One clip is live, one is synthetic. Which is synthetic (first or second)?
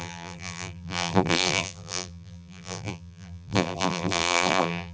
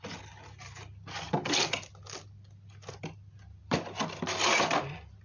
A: first